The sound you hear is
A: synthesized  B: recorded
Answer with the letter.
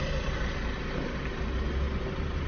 B